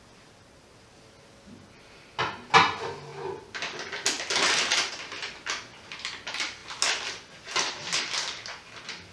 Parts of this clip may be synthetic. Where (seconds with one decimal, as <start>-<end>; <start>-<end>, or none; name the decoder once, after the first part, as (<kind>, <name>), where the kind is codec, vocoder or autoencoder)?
none